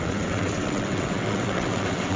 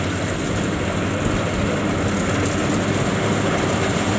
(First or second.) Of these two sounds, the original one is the second